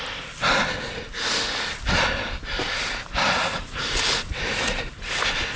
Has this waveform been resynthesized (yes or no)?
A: no